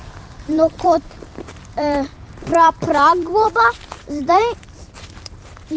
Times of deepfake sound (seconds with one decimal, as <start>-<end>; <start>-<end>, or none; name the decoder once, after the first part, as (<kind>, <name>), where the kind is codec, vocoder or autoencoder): 0.0-5.8 (vocoder, BigVGAN v2)